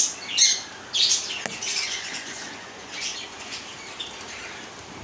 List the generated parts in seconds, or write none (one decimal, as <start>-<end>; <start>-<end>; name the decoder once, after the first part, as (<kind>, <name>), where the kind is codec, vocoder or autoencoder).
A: 1.7-3.6 (vocoder, Vocos)